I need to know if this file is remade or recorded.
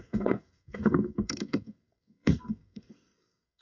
remade